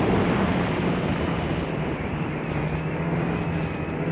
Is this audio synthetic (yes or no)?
no